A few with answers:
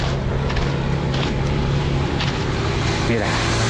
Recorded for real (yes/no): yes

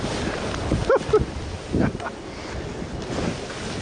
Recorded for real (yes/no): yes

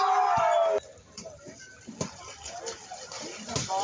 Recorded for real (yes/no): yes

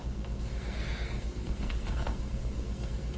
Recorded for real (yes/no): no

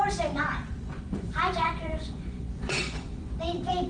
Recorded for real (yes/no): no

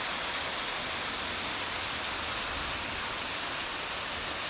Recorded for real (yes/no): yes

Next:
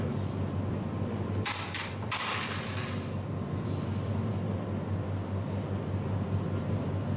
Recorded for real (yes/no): yes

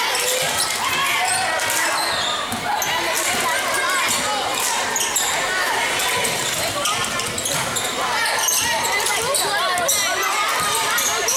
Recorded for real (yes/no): yes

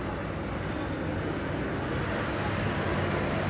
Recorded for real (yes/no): yes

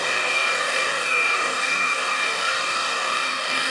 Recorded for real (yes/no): no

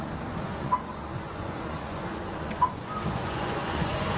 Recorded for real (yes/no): no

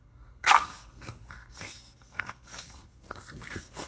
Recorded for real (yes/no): no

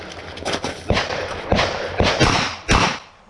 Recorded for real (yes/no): yes